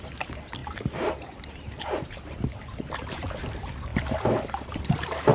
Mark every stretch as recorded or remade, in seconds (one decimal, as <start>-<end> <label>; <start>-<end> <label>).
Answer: 0.0-5.3 remade